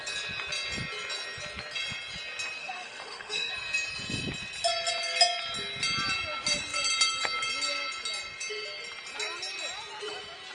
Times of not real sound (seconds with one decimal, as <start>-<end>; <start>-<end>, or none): 2.6-3.5